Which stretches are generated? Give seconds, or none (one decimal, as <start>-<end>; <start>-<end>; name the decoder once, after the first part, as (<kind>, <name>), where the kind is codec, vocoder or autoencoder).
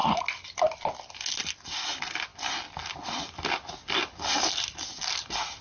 none